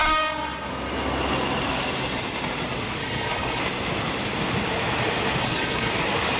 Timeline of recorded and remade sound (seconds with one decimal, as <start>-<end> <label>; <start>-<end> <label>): 0.0-3.0 recorded; 3.0-3.6 remade; 3.6-5.4 recorded; 5.4-5.9 remade; 5.9-6.4 recorded